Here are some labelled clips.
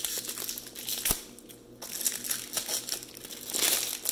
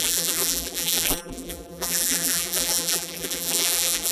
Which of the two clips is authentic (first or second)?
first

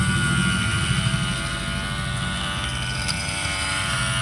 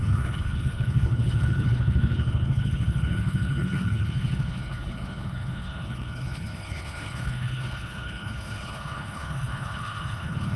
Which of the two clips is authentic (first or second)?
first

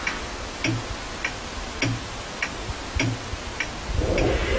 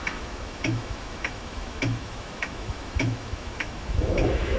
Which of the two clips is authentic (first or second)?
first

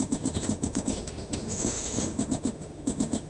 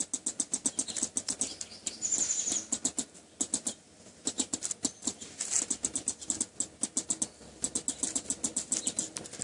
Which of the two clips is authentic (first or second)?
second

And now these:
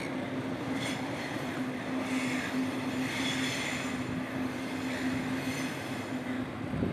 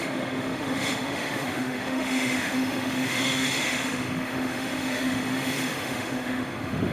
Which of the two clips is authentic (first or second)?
first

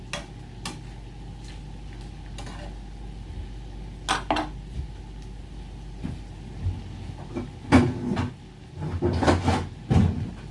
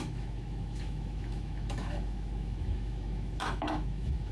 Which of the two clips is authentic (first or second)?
first